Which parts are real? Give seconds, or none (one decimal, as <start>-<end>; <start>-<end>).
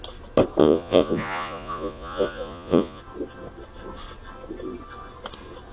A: 0.0-0.6; 3.0-5.7